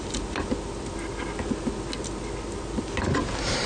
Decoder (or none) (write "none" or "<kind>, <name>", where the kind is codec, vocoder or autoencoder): none